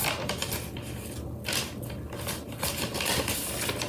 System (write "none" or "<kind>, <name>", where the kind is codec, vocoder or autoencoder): none